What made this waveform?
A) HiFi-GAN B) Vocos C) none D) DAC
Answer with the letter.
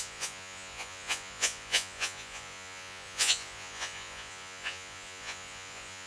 B